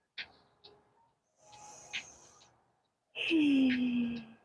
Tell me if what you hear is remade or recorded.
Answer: recorded